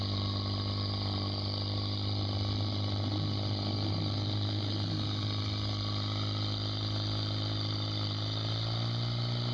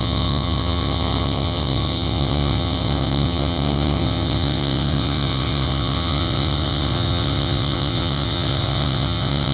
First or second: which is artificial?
second